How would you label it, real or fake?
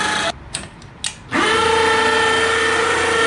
real